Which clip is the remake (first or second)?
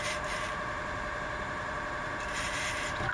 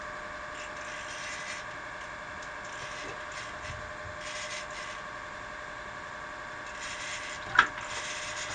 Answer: first